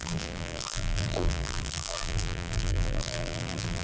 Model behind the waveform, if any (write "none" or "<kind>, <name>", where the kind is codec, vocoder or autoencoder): vocoder, BigVGAN v2